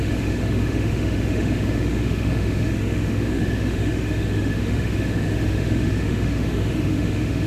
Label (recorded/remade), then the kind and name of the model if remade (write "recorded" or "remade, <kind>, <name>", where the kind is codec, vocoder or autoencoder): remade, autoencoder, DAC-VAE